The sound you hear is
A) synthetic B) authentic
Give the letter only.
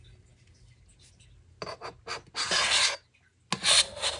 B